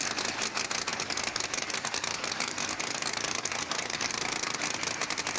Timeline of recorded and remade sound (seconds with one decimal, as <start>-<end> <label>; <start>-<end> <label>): 0.0-0.9 recorded; 0.9-4.1 remade; 4.1-5.4 recorded